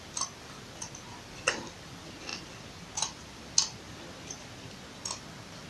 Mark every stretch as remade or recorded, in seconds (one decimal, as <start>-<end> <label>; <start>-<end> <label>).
0.0-5.7 recorded